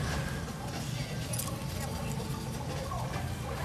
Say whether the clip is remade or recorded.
recorded